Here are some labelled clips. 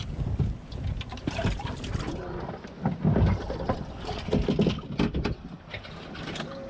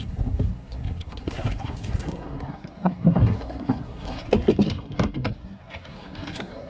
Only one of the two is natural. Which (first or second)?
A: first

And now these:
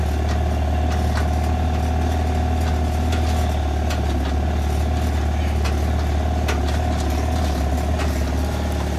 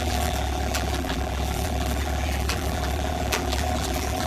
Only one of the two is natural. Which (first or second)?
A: first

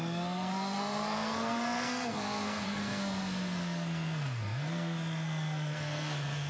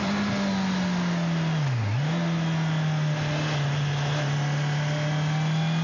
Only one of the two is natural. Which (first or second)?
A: second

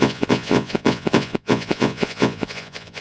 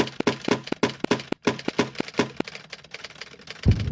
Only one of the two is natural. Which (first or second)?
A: second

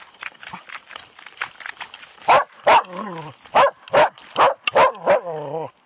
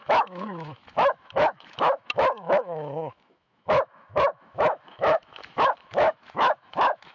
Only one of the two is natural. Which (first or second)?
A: first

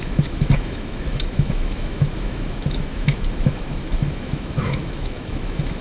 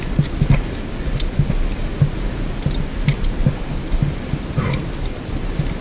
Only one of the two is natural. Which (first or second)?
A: second